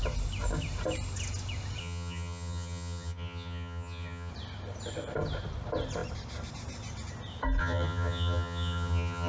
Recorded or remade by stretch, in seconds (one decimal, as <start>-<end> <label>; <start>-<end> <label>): 0.0-1.8 recorded; 1.8-4.3 remade; 4.3-7.6 recorded; 7.6-9.3 remade